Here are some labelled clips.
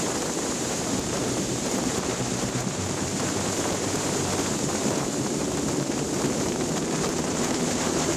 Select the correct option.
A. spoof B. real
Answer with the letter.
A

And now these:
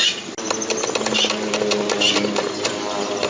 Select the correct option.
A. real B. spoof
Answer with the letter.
A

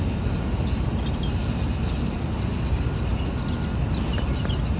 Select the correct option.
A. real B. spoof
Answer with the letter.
A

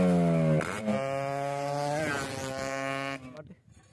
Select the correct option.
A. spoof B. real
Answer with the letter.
B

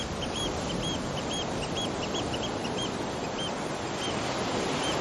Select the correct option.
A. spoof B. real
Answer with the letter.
A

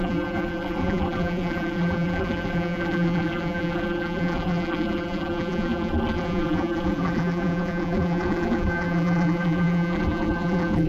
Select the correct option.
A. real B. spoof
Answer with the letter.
B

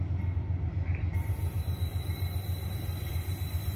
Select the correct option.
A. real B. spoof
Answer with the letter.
B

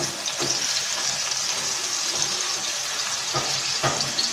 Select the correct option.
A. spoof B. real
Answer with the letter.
B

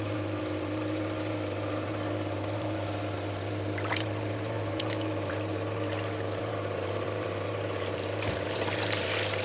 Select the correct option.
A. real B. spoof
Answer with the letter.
B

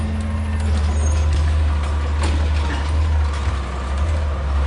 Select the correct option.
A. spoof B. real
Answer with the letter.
B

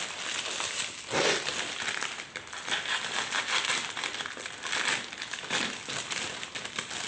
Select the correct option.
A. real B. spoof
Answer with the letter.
A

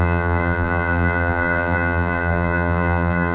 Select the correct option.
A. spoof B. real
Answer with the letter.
A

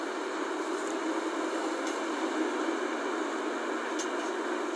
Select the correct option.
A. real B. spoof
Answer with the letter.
A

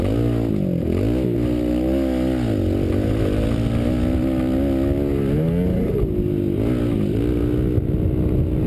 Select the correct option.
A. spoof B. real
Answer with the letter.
B